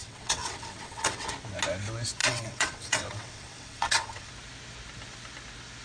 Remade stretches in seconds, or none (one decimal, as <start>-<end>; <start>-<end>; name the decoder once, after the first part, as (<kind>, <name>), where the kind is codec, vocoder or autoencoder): 0.0-1.3 (vocoder, WaveNeXt); 2.2-4.3